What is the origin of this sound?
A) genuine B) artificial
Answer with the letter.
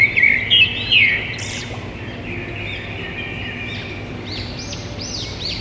A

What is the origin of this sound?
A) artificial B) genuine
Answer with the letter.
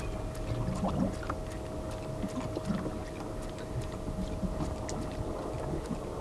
B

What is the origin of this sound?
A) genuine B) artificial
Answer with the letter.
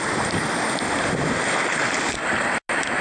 A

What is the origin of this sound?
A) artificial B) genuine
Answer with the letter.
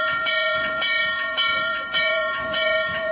A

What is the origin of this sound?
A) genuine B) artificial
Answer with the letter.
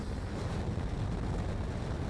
A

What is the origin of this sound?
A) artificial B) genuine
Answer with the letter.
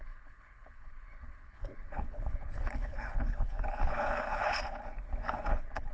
A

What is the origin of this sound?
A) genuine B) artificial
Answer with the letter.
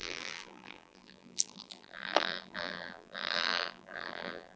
B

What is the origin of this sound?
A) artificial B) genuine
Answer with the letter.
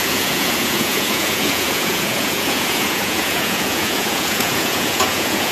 A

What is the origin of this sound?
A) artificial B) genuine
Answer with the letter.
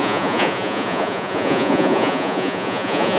A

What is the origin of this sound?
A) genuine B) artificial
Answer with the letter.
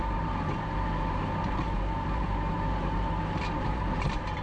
B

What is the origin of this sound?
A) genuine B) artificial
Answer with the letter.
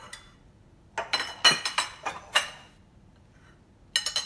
A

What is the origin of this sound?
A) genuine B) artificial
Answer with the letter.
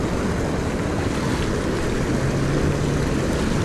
A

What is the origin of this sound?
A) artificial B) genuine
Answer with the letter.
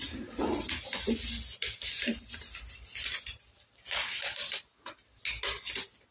B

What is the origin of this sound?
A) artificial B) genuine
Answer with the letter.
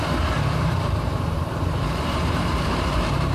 A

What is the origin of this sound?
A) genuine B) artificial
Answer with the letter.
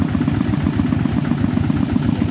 A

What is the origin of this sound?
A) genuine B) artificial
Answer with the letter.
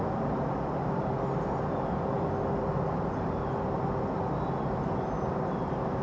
A